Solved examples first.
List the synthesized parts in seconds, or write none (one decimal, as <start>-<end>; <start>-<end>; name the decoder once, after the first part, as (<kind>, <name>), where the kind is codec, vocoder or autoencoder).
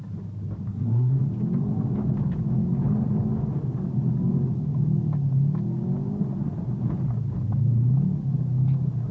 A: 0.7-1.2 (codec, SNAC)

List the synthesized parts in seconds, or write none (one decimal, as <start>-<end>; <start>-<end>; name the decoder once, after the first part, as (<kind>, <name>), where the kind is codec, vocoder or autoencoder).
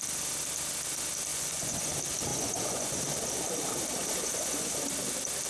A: 1.3-1.9 (vocoder, Vocos); 2.3-3.0; 4.2-4.8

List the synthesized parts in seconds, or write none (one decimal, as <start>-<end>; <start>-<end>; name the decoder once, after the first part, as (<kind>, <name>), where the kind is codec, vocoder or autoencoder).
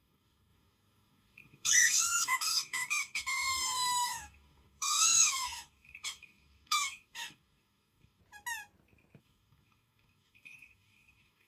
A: 0.0-8.2 (codec, DAC); 9.2-11.5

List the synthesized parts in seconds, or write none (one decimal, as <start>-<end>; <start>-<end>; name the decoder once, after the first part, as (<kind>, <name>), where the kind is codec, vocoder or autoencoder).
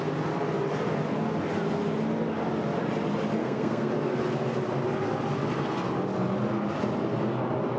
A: 3.4-3.9 (codec, SNAC)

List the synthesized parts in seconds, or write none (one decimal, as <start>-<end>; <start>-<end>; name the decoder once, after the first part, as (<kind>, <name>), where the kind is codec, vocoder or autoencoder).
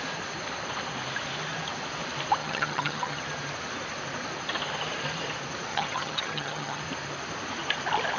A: 2.4-3.2 (vocoder, HiFi-GAN); 5.7-6.8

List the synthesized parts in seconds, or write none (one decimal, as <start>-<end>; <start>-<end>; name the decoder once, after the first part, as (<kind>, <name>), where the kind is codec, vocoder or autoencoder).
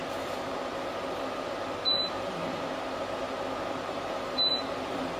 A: 0.0-0.9 (vocoder, BigVGAN v2); 1.9-5.2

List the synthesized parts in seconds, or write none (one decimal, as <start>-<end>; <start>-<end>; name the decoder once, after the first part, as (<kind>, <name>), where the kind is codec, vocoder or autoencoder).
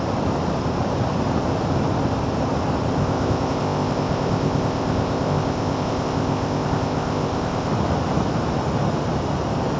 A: 3.0-7.7 (codec, ZipCodec)